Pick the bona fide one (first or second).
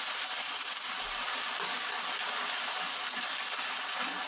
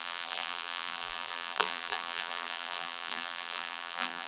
first